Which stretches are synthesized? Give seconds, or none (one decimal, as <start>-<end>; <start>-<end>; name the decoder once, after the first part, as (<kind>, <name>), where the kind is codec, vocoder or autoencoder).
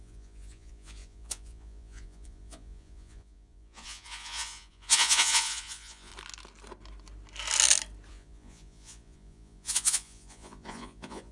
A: 0.0-6.1 (vocoder, Vocos); 8.1-11.3